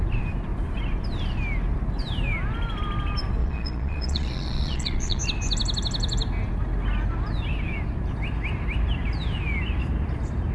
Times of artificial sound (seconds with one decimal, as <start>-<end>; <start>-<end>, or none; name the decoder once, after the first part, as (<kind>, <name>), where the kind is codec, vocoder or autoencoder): 3.4-5.2 (vocoder, Vocos)